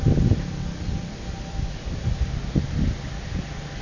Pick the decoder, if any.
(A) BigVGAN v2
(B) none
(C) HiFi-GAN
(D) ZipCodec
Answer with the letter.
B